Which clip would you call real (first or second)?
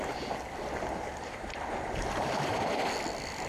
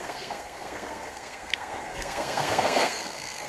first